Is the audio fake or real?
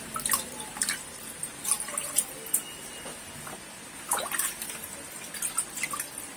real